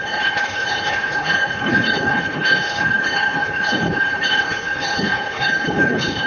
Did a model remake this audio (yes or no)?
yes